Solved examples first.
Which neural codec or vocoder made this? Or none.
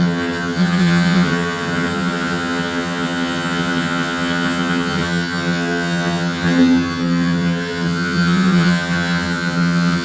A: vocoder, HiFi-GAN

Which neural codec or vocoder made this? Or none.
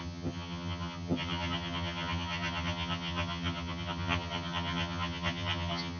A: vocoder, HiFi-GAN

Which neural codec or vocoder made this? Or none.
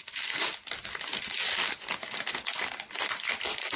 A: none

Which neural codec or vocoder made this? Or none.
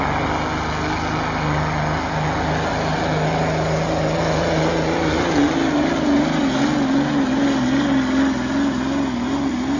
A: none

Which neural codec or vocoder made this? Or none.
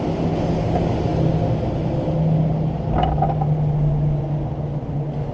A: none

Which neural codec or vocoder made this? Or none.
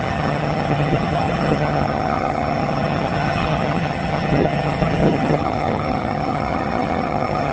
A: vocoder, HiFi-GAN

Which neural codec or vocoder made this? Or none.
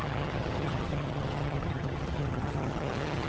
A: vocoder, HiFi-GAN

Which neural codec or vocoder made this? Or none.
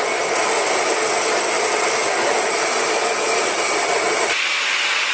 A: none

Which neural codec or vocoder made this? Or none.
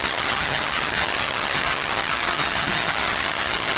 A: vocoder, HiFi-GAN